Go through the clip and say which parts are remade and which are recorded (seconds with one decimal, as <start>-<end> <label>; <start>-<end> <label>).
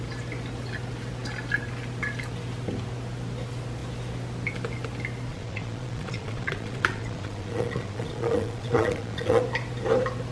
0.0-5.3 recorded; 5.3-9.4 remade; 9.4-10.3 recorded